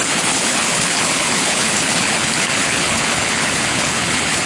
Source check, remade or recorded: remade